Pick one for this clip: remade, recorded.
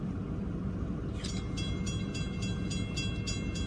recorded